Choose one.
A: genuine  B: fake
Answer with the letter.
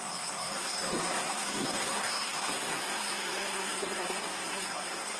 B